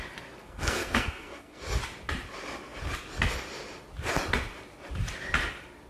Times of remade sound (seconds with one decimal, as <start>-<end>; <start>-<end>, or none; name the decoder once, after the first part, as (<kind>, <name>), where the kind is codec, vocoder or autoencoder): 0.4-1.6 (codec, SNAC)